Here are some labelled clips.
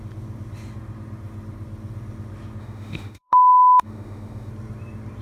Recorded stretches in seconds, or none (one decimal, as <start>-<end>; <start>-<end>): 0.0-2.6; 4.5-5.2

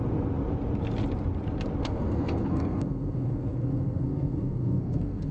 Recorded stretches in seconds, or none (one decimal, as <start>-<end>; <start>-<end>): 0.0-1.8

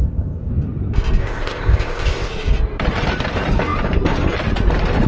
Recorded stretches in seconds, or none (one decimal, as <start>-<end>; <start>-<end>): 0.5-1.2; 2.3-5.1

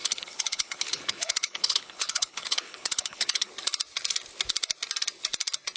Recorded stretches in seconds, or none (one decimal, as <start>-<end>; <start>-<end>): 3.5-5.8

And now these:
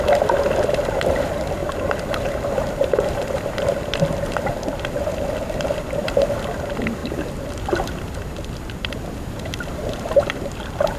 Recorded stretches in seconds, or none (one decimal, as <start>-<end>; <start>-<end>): 0.0-11.0

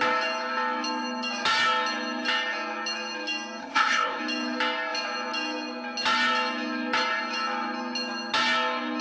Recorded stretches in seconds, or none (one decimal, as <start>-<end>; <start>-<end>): 0.0-3.6; 4.2-9.0